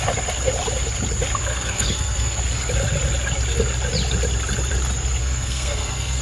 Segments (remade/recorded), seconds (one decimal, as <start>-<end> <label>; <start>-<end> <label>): 0.0-1.5 recorded; 1.5-2.4 remade; 2.4-5.2 recorded; 5.2-6.2 remade